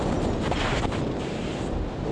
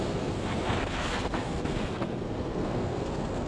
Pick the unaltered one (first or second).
first